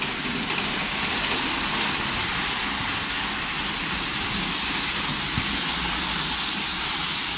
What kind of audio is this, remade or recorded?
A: recorded